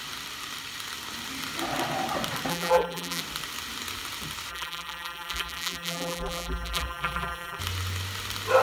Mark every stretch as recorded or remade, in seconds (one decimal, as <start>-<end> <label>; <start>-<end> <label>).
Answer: 0.0-2.5 recorded; 2.5-3.2 remade; 3.2-4.5 recorded; 4.5-7.6 remade; 7.6-8.6 recorded

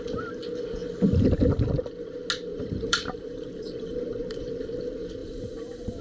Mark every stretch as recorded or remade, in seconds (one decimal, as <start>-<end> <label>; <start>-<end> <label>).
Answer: 0.0-2.5 recorded; 2.5-4.4 remade; 4.4-5.2 recorded; 5.2-6.0 remade